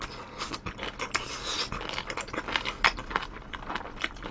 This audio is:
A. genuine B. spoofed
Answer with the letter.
A